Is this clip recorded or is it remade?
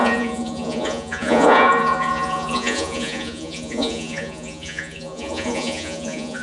remade